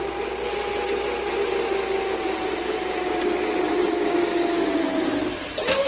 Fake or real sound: real